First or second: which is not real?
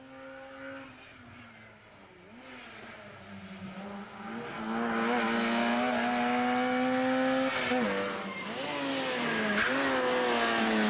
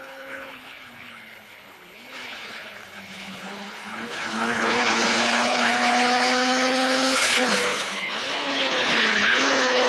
second